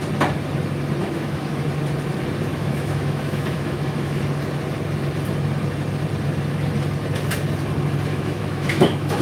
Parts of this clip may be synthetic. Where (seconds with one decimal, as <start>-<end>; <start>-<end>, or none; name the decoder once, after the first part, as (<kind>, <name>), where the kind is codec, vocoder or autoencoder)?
1.0-1.6 (autoencoder, DAC-VAE); 2.5-4.2; 8.1-9.2